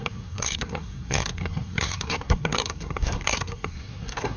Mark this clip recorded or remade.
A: remade